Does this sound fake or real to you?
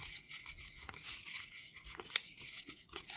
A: fake